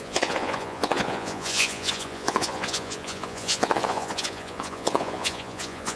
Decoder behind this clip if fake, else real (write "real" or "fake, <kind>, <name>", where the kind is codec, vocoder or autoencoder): fake, vocoder, Vocos